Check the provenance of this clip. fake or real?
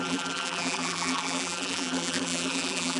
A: fake